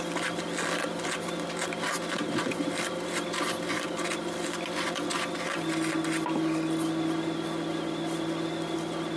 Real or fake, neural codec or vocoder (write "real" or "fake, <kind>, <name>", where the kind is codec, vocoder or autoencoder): real